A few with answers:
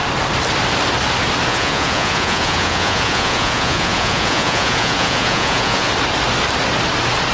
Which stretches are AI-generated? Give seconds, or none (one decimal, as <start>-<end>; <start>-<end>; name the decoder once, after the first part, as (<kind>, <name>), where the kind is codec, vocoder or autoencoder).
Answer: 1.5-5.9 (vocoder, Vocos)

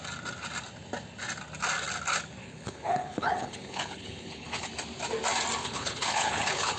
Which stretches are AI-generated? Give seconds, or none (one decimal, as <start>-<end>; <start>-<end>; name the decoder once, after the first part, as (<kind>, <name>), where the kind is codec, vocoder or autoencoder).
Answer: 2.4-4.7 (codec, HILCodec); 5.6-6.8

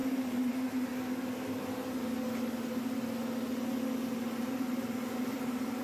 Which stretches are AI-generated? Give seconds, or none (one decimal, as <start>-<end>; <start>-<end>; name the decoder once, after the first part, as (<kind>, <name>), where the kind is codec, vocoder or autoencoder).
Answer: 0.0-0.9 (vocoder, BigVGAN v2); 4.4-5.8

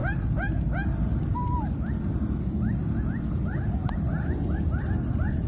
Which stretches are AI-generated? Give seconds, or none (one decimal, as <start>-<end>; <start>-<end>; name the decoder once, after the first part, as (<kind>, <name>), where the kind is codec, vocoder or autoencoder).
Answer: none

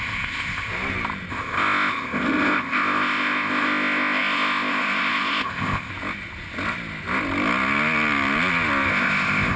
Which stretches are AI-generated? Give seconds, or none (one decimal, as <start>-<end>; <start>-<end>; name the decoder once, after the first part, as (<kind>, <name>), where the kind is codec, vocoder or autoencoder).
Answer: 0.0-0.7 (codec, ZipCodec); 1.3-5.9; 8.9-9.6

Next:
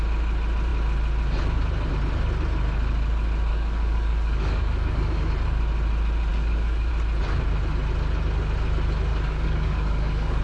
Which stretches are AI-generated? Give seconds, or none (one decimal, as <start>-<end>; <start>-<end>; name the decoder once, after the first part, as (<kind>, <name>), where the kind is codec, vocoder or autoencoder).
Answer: 3.5-5.3 (codec, DAC); 6.3-6.9; 9.1-10.4

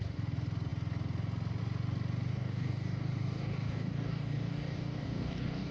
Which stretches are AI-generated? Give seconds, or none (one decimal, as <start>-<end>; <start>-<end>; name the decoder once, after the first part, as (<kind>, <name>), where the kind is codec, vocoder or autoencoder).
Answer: 2.3-5.7 (codec, DAC)